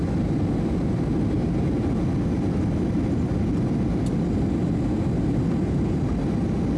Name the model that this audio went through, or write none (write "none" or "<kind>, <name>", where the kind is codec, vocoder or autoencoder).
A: none